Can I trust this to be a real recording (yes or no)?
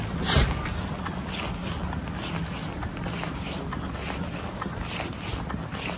yes